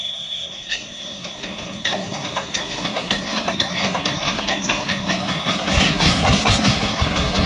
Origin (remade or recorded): remade